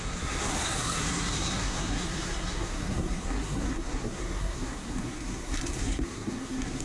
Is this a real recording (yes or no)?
no